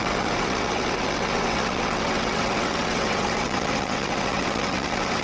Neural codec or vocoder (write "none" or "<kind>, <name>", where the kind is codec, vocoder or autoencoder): vocoder, WaveNeXt